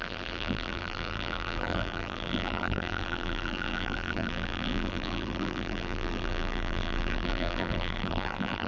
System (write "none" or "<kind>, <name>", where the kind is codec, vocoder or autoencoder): vocoder, BigVGAN v2